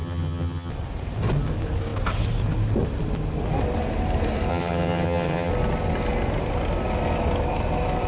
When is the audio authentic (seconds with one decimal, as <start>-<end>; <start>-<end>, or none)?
0.7-4.5; 5.5-8.1